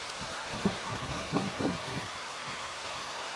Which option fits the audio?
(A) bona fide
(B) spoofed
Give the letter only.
B